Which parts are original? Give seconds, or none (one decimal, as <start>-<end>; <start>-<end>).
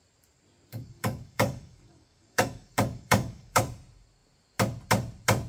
0.0-0.7; 3.6-5.5